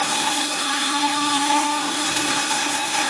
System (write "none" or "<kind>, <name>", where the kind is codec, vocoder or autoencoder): codec, SNAC